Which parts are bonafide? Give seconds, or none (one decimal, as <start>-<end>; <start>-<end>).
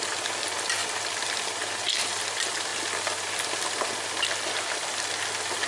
0.0-5.7